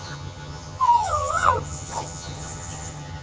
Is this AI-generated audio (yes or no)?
yes